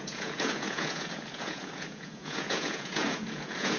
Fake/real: fake